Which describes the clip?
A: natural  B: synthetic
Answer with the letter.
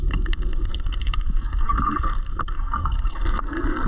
B